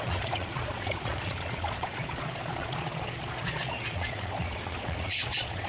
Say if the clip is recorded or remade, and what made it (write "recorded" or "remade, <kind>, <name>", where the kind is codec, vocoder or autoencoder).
remade, vocoder, Vocos